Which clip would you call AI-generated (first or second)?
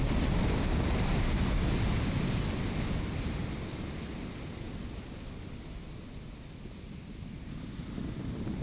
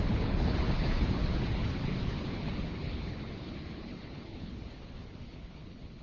second